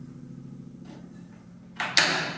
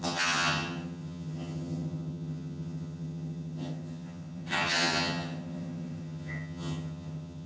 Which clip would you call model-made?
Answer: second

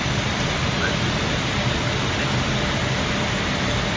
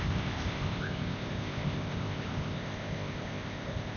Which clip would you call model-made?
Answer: second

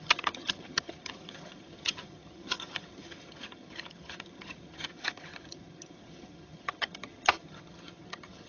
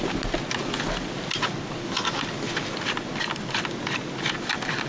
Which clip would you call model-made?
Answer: first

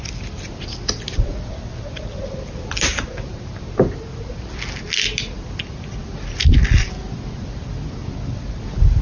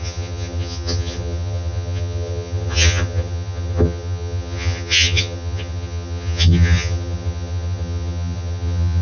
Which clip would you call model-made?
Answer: second